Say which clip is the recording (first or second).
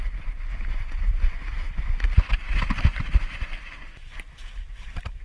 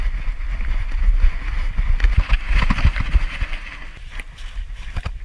second